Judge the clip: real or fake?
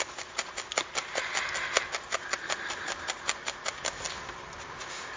real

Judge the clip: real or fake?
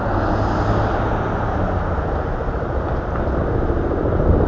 real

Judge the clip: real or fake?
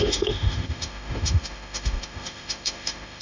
fake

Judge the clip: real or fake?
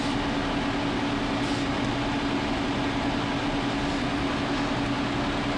real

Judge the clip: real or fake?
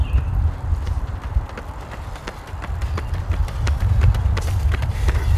real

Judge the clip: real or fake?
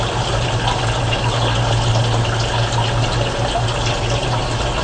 real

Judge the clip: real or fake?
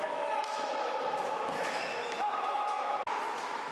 fake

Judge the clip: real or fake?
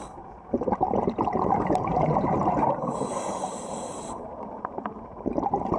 fake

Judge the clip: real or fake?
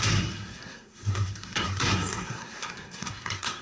fake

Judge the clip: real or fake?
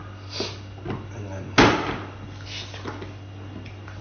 real